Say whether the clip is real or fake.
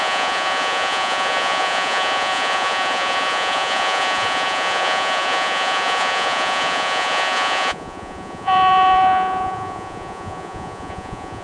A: fake